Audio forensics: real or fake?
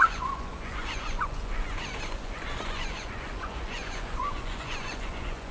fake